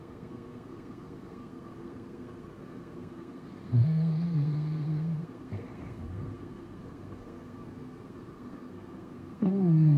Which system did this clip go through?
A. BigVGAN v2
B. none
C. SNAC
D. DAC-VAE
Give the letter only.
C